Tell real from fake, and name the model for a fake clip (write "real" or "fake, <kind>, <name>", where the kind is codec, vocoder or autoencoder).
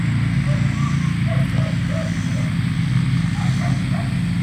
real